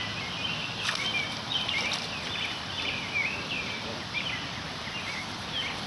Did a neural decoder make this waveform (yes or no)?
no